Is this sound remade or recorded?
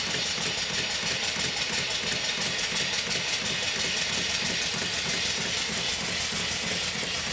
recorded